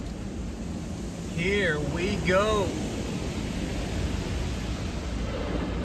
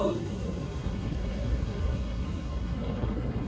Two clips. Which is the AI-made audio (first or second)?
second